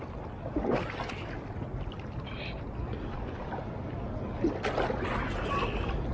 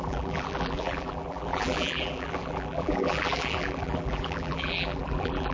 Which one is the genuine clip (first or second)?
first